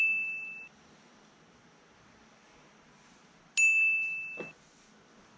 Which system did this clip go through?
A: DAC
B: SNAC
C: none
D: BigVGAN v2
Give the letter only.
C